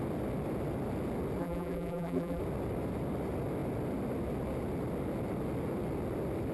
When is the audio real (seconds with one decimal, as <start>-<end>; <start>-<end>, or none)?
0.0-1.4; 2.4-6.5

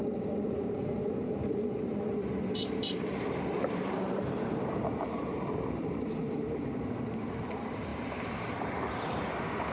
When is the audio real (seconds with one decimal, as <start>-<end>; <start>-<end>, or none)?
0.0-0.5

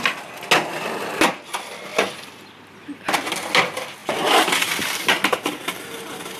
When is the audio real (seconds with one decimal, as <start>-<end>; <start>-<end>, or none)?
0.0-1.9; 2.5-4.0; 4.6-6.4